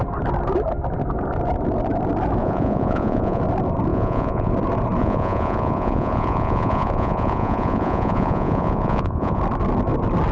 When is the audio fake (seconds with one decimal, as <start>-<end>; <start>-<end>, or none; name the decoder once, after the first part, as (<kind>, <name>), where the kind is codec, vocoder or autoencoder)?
2.4-3.4 (vocoder, Vocos); 3.9-4.5; 5.0-9.4